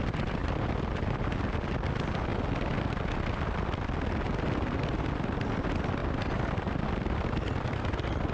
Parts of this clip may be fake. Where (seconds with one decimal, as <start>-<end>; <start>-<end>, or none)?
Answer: 0.4-1.7; 2.3-2.8; 6.0-7.8